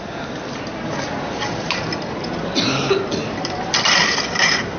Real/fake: real